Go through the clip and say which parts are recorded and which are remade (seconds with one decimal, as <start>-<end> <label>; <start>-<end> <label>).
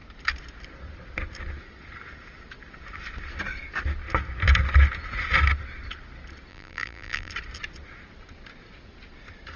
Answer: 0.0-6.5 recorded; 6.5-7.3 remade; 7.3-9.6 recorded